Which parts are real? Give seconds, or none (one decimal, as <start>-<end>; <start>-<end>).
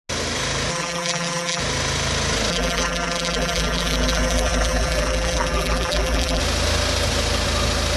0.0-0.7; 1.6-2.5; 6.4-8.0